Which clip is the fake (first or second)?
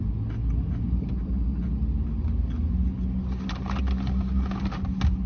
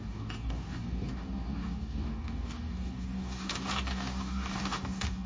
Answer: second